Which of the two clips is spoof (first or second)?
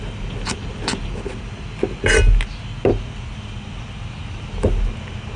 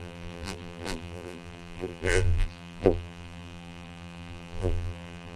second